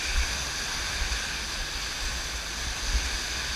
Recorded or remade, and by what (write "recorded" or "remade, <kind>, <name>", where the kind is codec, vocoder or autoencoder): recorded